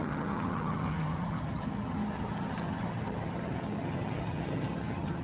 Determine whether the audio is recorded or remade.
remade